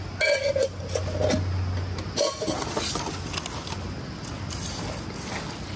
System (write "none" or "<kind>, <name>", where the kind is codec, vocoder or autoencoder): none